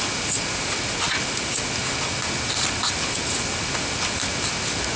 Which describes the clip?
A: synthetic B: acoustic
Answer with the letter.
B